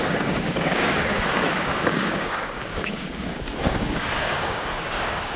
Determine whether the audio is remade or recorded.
remade